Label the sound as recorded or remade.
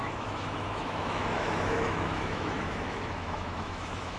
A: remade